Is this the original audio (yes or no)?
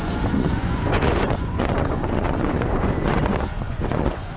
no